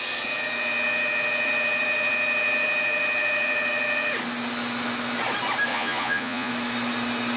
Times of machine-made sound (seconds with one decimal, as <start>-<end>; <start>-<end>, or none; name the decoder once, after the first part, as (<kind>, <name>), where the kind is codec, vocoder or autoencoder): 5.7-6.5 (vocoder, Vocos)